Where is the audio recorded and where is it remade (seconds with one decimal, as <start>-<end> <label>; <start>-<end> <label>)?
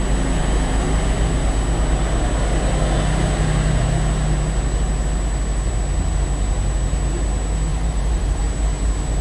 0.0-7.7 recorded; 7.7-8.4 remade; 8.4-9.2 recorded